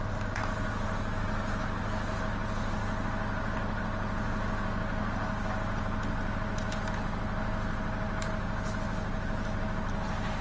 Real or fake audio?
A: real